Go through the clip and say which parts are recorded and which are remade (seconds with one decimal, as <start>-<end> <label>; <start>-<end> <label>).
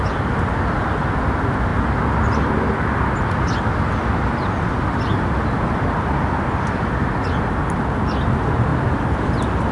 0.0-9.7 recorded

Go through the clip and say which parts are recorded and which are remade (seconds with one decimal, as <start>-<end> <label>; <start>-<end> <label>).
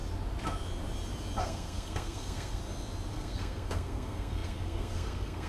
0.0-1.4 recorded; 1.4-2.6 remade; 2.6-3.1 recorded; 3.1-5.5 remade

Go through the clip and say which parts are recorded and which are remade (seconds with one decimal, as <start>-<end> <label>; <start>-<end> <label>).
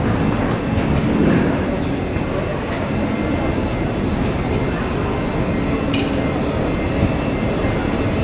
0.0-1.2 recorded; 1.2-1.8 remade; 1.8-3.6 recorded; 3.6-4.3 remade; 4.3-8.2 recorded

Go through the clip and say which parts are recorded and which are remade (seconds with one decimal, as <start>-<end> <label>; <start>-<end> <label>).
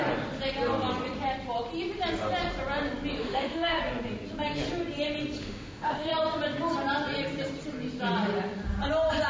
0.0-3.2 recorded; 3.2-3.8 remade; 3.8-5.4 recorded; 5.4-6.1 remade; 6.1-9.3 recorded